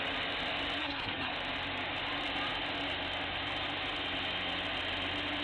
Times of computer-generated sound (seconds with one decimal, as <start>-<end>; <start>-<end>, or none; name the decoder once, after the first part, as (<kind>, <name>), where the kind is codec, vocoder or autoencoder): 0.8-1.3 (codec, SNAC)